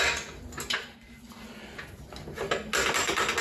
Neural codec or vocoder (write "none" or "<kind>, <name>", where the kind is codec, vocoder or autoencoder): none